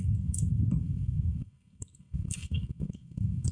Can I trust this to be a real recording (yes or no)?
no